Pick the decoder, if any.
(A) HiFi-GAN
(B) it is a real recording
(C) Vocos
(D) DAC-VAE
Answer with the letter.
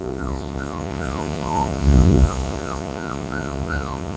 C